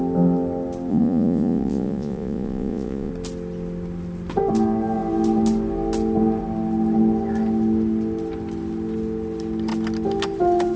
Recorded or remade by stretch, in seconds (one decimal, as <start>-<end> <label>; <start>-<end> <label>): 0.0-0.9 recorded; 0.9-3.1 remade; 3.1-10.8 recorded

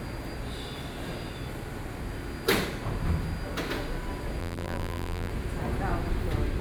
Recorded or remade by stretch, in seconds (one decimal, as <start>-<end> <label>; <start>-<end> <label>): 0.0-4.4 recorded; 4.4-5.3 remade; 5.3-6.6 recorded

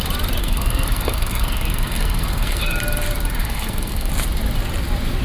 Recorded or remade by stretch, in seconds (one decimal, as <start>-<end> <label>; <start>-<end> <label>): 0.0-0.4 recorded; 0.4-2.8 remade; 2.8-3.4 recorded; 3.4-4.1 remade; 4.1-5.2 recorded